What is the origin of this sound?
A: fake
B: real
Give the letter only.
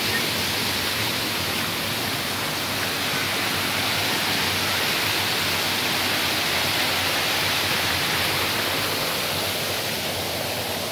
B